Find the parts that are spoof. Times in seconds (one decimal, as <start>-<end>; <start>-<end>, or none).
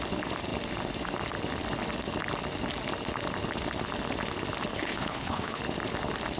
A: 4.7-5.6